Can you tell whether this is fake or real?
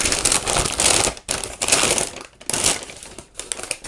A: real